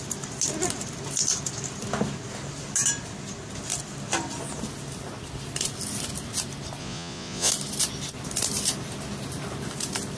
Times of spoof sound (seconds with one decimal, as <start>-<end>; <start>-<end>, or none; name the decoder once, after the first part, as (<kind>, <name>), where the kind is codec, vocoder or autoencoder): 6.8-7.5 (vocoder, Vocos)